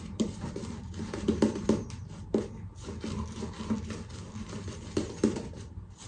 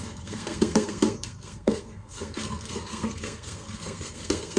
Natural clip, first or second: first